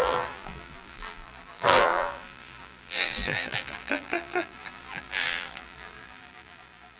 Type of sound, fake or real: fake